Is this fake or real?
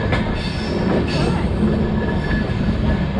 real